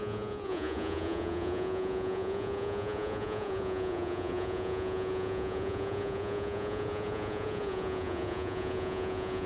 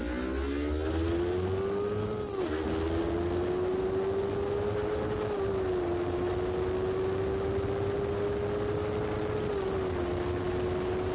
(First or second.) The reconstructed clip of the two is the first